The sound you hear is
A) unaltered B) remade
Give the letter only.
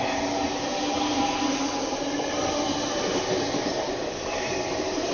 A